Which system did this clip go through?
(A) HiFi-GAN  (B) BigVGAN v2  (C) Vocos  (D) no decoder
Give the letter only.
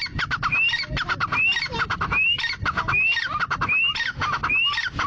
D